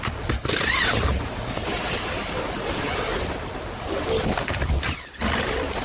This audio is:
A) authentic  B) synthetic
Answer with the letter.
A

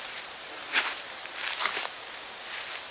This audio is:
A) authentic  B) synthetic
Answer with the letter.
B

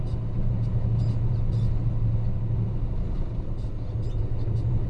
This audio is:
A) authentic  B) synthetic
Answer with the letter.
A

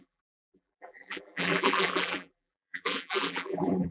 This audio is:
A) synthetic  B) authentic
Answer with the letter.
A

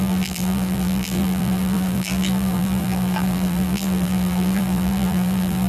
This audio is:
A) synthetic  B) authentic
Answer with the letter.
A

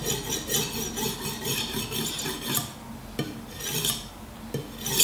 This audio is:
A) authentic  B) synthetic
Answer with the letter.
A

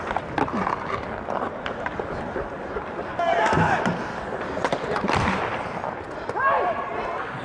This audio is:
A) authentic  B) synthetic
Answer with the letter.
A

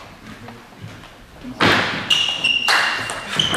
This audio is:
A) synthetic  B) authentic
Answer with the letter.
B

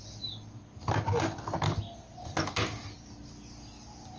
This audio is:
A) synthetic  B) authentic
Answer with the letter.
B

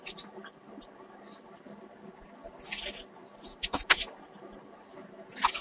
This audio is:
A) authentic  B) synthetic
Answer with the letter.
A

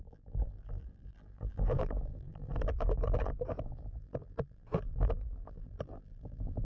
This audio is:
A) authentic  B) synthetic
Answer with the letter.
B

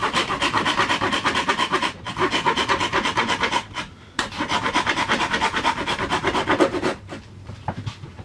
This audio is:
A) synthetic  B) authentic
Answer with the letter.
A